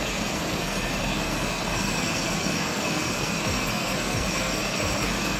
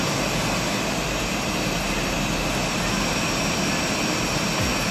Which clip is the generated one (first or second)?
first